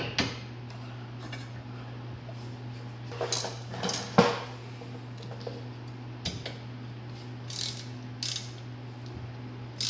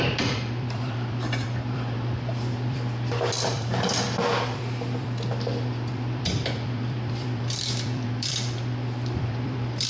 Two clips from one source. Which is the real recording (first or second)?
first